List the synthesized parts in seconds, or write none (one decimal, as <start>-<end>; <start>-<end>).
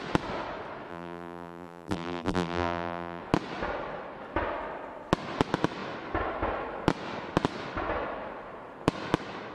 0.9-3.2